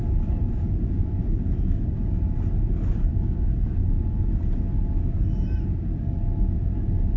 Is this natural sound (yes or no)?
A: yes